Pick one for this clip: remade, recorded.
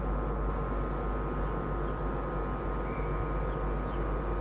recorded